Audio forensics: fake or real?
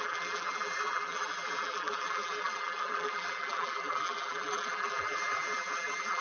fake